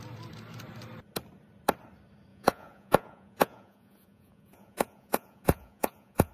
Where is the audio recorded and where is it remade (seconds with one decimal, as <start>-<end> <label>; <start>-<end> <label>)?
0.0-2.3 recorded; 2.3-6.3 remade